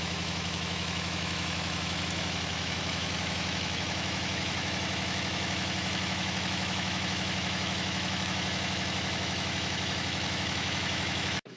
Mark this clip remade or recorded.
remade